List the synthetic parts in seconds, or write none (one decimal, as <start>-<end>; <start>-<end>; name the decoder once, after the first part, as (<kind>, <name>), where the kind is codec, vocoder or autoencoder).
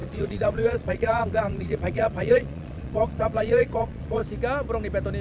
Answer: 0.0-4.2 (vocoder, Vocos)